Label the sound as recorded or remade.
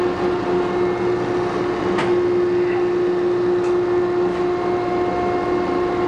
recorded